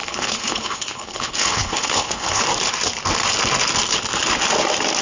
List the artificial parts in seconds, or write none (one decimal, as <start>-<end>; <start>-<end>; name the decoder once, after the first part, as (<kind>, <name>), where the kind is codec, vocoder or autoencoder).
0.0-2.4 (codec, HILCodec)